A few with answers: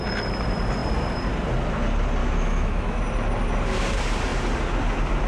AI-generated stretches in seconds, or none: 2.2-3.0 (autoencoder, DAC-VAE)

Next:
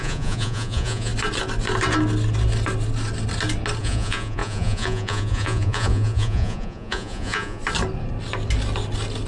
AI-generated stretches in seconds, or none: 0.0-1.1 (vocoder, Vocos); 3.8-7.6

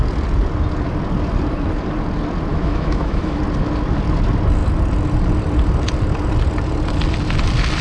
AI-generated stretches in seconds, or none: 2.5-3.4 (autoencoder, DAC-VAE)

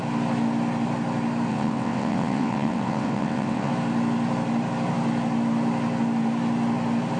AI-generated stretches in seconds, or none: 1.5-3.7 (vocoder, WaveNeXt)

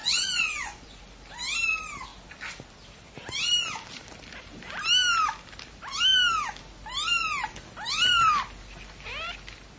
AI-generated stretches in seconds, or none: 0.0-1.0 (vocoder, Vocos)

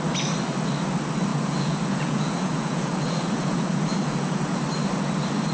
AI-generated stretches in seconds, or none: 1.3-4.6 (vocoder, Vocos)

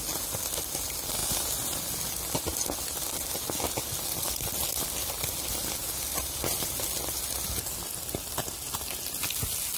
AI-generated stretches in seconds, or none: none